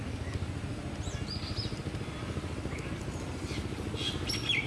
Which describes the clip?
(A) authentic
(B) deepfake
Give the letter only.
A